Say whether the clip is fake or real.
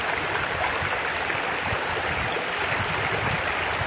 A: real